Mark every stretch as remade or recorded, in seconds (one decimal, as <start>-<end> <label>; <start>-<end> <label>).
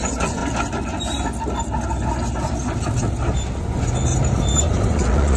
0.0-0.4 remade; 0.4-3.6 recorded; 3.6-4.1 remade; 4.1-4.7 recorded; 4.7-5.4 remade